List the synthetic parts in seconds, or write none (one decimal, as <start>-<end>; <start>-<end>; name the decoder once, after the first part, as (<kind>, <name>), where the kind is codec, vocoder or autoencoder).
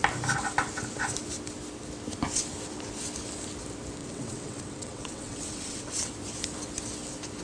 4.0-6.1 (vocoder, WaveNeXt)